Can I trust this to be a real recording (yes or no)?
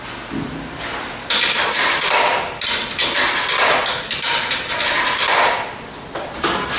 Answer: yes